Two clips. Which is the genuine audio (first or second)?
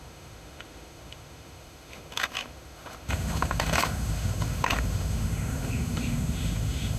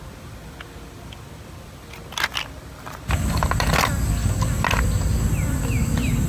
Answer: second